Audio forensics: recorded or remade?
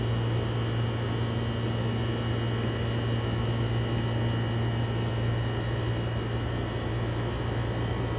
recorded